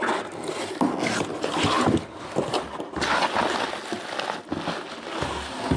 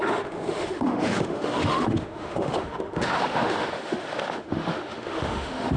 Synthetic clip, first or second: second